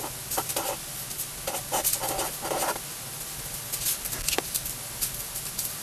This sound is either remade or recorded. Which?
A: recorded